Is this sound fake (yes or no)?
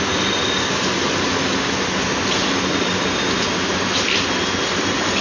no